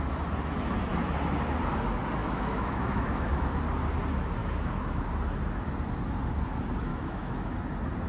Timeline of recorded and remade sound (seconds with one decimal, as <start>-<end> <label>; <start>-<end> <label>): 0.0-2.2 recorded; 2.2-3.6 remade; 3.6-4.4 recorded; 4.4-5.0 remade; 5.0-6.9 recorded; 6.9-7.6 remade; 7.6-8.1 recorded